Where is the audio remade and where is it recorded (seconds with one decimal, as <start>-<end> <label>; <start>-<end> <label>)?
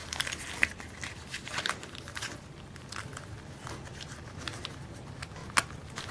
0.0-3.7 remade; 3.7-6.1 recorded